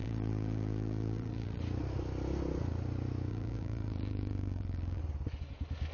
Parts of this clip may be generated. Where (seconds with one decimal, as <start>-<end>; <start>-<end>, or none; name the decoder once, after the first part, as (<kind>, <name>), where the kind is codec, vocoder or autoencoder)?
0.0-1.6 (vocoder, BigVGAN v2); 3.3-5.0